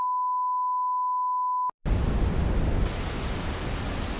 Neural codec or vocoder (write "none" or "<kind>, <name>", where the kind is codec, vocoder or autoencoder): none